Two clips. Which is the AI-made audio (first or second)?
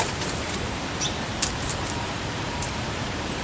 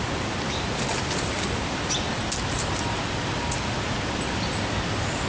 first